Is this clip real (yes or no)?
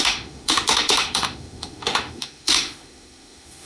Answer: no